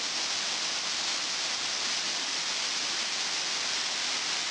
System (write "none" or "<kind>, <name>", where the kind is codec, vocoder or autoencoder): none